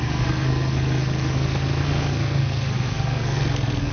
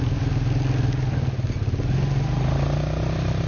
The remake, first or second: first